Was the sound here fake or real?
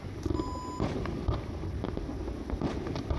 real